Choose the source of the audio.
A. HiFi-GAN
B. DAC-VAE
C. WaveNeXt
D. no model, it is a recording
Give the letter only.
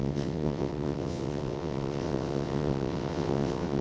C